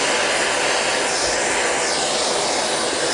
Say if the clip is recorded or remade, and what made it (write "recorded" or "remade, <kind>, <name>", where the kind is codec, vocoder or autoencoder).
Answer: recorded